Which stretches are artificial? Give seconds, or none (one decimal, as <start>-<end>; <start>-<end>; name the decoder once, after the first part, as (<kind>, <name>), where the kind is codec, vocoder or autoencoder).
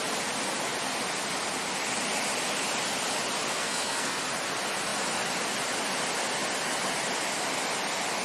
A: 3.5-4.2 (codec, SNAC)